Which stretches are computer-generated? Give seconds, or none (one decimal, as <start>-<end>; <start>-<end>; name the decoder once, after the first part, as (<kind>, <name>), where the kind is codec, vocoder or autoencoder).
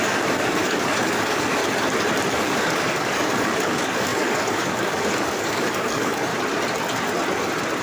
0.0-1.6 (codec, DAC); 2.3-6.3